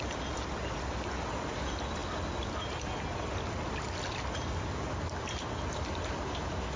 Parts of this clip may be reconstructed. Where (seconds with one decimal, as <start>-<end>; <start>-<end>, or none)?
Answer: none